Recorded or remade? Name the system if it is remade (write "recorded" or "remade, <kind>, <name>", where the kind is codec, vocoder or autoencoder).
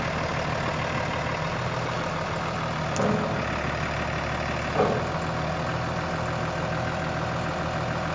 recorded